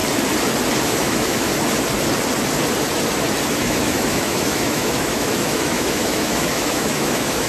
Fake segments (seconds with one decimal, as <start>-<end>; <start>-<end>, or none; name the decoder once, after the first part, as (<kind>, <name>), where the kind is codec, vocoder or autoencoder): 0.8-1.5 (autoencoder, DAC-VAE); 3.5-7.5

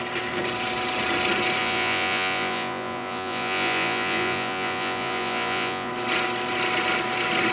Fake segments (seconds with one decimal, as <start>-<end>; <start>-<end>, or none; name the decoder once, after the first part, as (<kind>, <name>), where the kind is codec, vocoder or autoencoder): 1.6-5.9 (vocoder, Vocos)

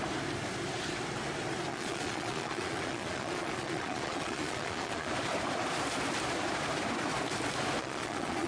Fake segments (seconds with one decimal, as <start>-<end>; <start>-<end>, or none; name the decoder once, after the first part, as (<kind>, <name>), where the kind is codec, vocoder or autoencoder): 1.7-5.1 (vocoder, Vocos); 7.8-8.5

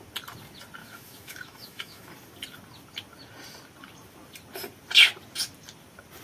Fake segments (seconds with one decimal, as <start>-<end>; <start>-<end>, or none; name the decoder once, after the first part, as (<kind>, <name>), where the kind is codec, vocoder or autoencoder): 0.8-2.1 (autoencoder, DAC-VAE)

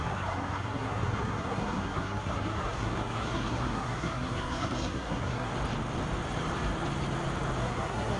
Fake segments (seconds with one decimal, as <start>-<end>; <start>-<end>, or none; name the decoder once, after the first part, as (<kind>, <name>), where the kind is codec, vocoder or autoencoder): 0.0-5.5 (codec, SNAC); 7.6-8.2